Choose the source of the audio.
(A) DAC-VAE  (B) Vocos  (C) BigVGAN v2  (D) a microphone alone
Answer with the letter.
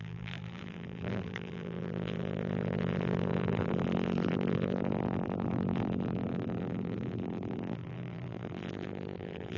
C